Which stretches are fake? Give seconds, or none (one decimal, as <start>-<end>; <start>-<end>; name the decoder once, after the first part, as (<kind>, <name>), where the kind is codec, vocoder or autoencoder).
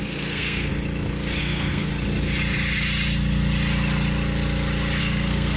0.0-0.7 (codec, SNAC); 1.4-1.9; 5.0-5.6